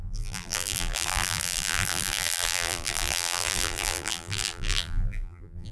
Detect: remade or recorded remade